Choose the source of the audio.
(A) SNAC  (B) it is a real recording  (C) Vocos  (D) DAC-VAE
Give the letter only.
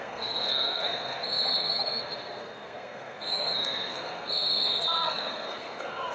A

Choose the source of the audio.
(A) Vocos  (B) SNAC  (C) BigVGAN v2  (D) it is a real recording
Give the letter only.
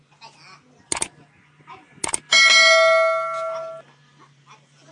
D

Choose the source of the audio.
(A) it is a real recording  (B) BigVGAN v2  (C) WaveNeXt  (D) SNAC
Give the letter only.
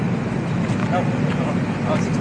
A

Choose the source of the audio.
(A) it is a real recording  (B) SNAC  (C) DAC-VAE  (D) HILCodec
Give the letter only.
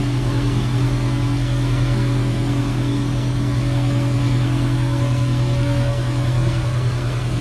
B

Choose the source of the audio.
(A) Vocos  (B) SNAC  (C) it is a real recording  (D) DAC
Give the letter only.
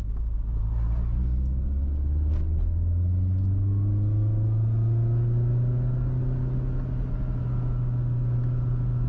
C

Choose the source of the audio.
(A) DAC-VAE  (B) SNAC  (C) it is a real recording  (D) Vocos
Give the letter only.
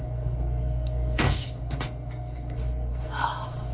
B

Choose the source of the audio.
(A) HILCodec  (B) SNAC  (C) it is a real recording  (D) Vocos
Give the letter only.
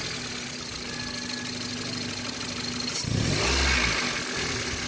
C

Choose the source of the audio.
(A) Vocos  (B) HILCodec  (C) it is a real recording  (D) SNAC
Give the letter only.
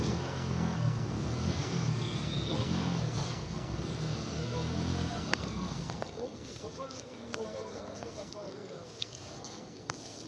D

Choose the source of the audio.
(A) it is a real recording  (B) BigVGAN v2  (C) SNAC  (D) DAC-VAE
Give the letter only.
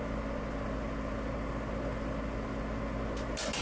A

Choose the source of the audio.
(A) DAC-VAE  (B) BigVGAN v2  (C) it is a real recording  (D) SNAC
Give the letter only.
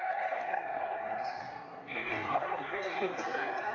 D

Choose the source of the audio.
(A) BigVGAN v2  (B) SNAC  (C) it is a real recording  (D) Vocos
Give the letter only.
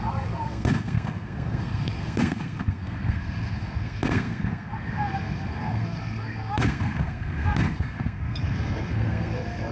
B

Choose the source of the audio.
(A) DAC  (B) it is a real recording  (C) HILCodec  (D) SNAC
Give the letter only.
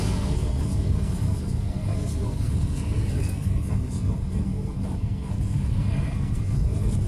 D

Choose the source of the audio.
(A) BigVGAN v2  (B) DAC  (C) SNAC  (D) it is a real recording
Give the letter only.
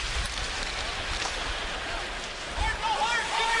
D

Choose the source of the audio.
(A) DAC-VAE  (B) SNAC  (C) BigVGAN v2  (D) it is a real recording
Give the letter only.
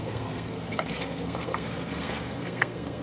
B